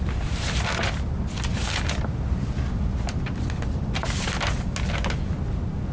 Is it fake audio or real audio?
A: real